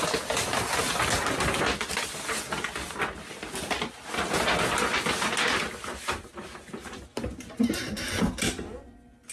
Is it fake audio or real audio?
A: real